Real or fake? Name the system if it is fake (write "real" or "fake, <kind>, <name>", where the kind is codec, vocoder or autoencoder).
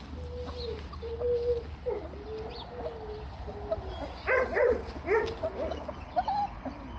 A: real